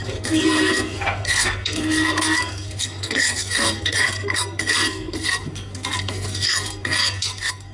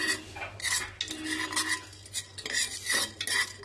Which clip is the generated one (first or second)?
first